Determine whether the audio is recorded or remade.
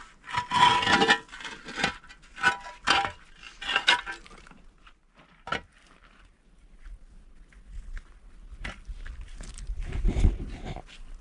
recorded